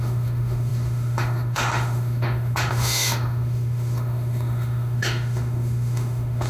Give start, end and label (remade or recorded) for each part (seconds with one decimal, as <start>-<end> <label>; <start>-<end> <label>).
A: 0.0-6.5 remade